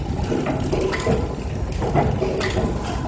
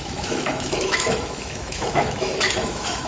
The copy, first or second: second